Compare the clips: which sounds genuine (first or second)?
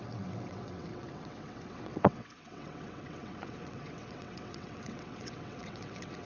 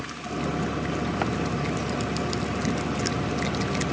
second